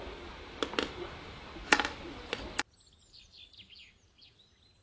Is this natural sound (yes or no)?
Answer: yes